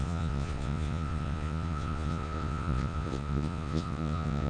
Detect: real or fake fake